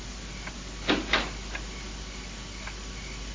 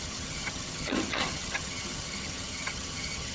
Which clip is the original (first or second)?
first